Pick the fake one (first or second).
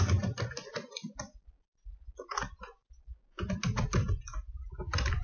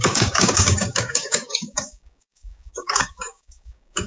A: second